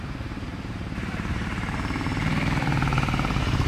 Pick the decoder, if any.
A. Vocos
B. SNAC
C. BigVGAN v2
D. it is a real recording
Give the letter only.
C